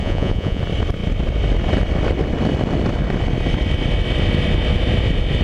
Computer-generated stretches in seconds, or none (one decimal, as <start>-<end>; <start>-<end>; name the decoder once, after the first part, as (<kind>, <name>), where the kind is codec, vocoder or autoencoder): 0.0-0.6 (vocoder, Vocos)